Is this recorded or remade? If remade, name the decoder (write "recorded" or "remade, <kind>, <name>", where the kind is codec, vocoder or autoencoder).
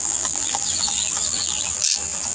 remade, vocoder, BigVGAN v2